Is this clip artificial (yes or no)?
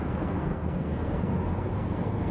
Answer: yes